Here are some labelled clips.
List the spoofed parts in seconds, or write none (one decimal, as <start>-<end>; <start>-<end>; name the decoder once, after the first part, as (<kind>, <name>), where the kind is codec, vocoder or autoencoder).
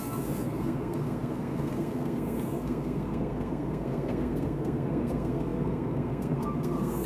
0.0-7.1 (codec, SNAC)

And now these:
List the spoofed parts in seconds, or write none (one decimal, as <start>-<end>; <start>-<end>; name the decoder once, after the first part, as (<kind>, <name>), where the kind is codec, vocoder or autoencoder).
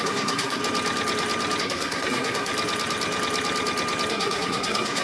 0.0-0.6 (codec, SNAC); 1.6-2.5; 4.1-5.0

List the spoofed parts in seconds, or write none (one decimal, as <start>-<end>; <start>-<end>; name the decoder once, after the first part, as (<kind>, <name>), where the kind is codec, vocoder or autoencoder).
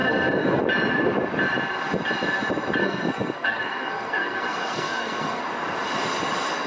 0.0-0.6 (codec, SNAC); 2.8-5.4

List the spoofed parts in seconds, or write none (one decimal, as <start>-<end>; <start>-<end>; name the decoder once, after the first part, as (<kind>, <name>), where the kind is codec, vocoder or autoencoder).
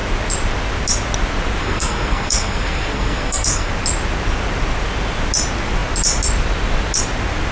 1.6-3.7 (codec, SNAC)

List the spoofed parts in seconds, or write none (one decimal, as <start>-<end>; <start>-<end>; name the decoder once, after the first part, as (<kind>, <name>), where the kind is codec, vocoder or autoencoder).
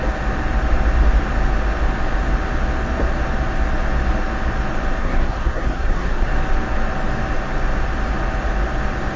5.0-6.3 (codec, SNAC)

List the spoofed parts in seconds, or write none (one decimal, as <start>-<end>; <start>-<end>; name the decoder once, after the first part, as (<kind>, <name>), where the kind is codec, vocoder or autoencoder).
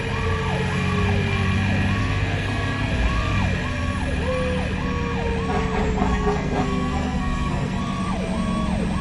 2.0-2.9 (codec, SNAC); 6.0-7.8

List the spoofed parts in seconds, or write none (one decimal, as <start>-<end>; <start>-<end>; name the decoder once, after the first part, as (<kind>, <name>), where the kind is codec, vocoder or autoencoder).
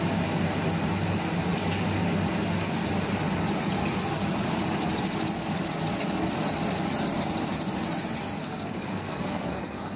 8.4-10.0 (codec, SNAC)